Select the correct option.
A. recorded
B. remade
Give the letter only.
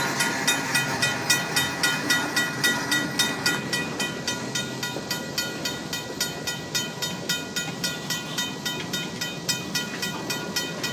A